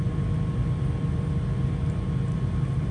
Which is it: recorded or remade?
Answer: recorded